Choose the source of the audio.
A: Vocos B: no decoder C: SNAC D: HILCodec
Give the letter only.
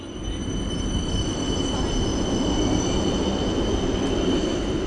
B